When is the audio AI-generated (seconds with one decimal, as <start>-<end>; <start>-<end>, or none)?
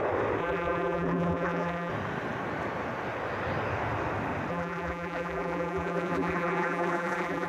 0.4-1.9; 4.5-7.5